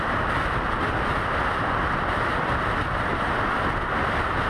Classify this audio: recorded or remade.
recorded